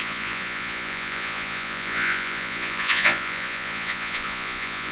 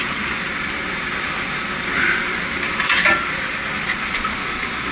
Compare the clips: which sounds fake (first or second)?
first